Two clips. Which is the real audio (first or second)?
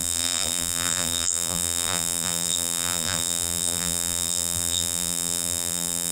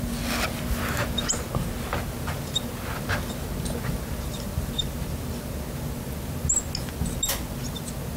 second